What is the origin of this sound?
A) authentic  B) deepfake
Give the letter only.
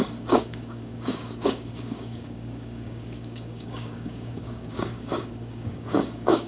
B